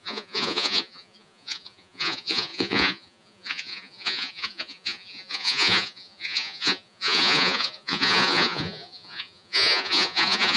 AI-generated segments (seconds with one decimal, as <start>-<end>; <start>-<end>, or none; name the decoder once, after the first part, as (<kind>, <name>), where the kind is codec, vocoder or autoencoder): 0.0-10.6 (vocoder, Vocos)